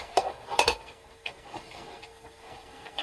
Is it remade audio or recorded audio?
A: remade